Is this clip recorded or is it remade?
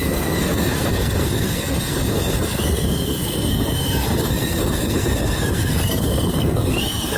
remade